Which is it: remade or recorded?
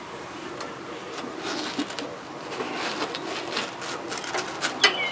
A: recorded